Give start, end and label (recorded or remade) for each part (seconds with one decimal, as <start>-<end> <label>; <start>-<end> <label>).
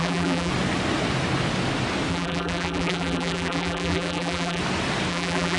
0.0-0.5 remade; 0.5-2.1 recorded; 2.1-4.6 remade; 4.6-5.1 recorded; 5.1-5.6 remade